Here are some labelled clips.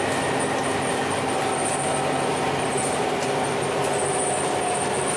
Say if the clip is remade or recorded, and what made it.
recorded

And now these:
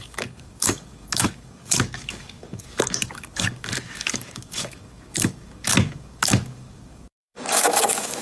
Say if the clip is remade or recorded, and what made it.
remade, codec, DAC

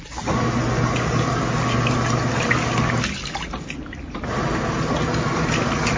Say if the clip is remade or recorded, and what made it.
recorded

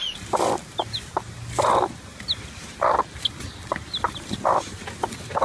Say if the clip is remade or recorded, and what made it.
recorded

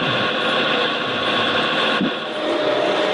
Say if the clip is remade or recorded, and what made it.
recorded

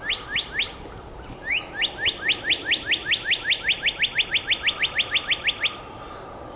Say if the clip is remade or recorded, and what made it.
recorded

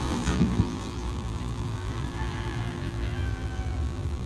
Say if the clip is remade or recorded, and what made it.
remade, vocoder, BigVGAN v2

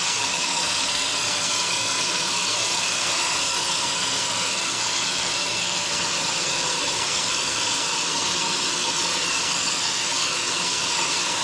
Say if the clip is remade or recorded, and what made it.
remade, codec, SNAC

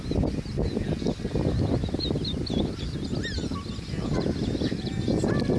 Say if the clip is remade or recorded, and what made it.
recorded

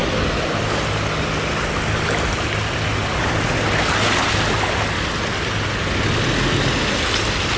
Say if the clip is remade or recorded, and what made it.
recorded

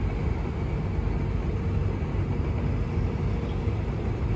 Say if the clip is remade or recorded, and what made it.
recorded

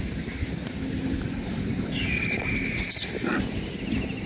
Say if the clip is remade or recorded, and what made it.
recorded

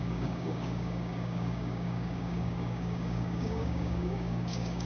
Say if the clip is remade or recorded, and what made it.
remade, codec, DAC